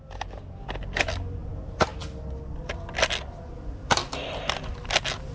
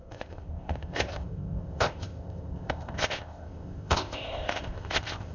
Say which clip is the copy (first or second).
second